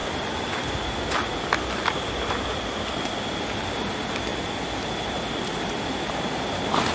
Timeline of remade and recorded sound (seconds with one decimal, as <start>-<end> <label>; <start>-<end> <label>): 0.0-6.9 recorded